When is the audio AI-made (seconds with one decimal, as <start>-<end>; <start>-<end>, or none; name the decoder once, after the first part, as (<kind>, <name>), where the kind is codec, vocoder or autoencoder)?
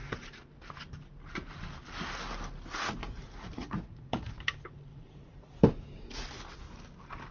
3.0-4.3 (vocoder, Vocos); 4.9-5.6